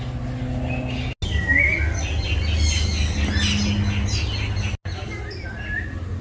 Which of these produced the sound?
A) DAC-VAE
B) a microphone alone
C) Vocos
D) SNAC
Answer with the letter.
B